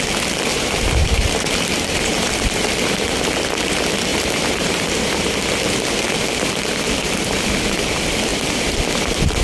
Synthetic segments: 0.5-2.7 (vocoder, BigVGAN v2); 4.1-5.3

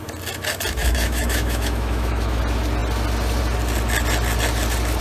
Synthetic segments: 0.8-2.4 (autoencoder, DAC-VAE)